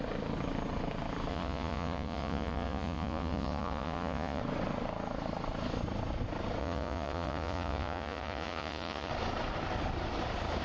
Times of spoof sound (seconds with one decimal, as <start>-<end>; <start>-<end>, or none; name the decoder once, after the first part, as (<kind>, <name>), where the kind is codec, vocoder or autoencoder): 1.3-4.4 (vocoder, Vocos); 6.6-9.1

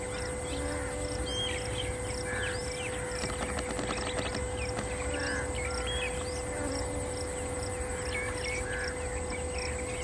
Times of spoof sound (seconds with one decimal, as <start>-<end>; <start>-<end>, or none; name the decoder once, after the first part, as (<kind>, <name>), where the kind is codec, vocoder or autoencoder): none

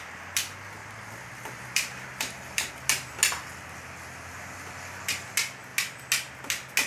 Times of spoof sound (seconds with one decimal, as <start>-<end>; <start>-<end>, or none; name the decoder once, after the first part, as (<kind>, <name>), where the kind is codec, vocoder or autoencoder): 0.8-2.7 (vocoder, BigVGAN v2)

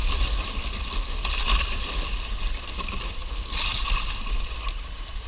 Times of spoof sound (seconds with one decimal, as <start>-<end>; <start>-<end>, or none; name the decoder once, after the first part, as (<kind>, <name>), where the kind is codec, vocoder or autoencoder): none